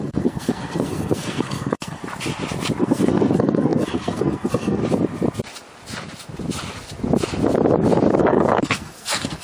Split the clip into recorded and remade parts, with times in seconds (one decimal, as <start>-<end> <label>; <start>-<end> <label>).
0.0-2.0 remade; 2.0-2.8 recorded; 2.8-4.8 remade; 4.8-8.2 recorded; 8.2-9.4 remade